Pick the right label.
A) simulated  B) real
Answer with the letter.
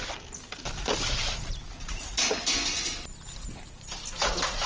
B